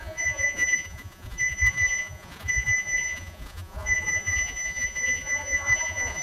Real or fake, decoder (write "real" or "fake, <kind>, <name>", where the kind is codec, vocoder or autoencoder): fake, vocoder, Vocos